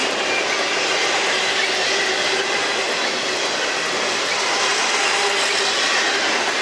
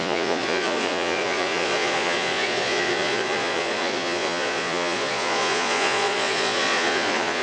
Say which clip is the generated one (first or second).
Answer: second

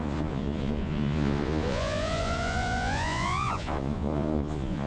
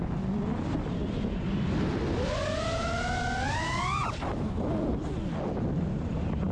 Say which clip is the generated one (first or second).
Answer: first